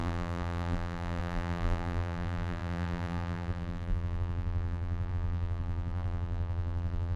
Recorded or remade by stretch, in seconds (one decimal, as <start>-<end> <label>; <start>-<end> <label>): 0.0-7.2 remade